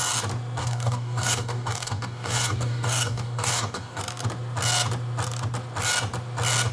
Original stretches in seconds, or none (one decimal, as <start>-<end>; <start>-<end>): 0.0-0.6; 4.0-6.7